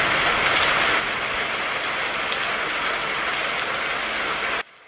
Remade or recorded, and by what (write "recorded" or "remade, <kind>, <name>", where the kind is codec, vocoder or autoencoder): recorded